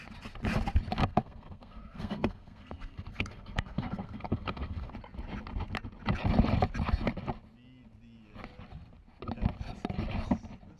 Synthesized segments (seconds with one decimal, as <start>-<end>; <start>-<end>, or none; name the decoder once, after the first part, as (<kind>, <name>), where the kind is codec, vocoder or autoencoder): 1.0-4.9 (codec, SNAC)

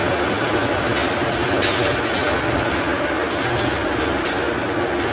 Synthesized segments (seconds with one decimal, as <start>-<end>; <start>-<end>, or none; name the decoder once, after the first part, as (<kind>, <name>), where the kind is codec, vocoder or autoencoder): none

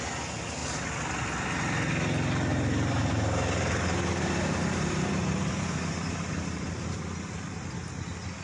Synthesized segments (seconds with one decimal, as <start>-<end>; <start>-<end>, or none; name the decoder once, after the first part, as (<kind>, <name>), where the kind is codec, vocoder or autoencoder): 2.5-7.0 (vocoder, BigVGAN v2)

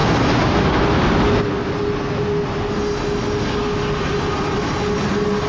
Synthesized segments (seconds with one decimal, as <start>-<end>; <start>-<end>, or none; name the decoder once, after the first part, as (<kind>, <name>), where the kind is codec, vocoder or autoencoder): none